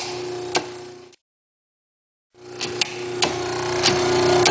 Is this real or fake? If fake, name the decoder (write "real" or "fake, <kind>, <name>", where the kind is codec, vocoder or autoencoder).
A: real